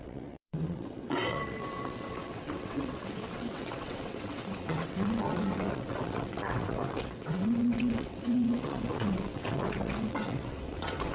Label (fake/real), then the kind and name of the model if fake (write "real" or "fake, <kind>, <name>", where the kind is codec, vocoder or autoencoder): fake, vocoder, WaveNeXt